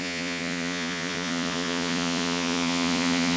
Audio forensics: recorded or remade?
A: remade